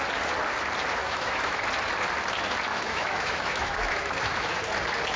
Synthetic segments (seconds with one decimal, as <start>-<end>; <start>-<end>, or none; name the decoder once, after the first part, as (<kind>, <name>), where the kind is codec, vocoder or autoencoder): 1.0-1.6 (autoencoder, DAC-VAE); 2.7-4.6